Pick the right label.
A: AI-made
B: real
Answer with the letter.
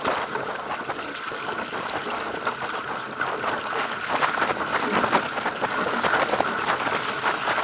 B